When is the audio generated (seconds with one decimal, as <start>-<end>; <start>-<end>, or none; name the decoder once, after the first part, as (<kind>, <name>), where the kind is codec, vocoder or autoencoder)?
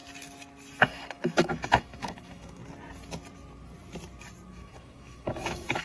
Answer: 0.8-2.6 (autoencoder, DAC-VAE); 4.5-5.8